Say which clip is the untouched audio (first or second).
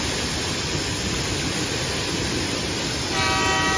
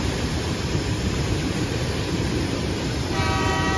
first